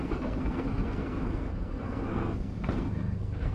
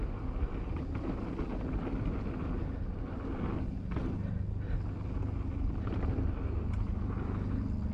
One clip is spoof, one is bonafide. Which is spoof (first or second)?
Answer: first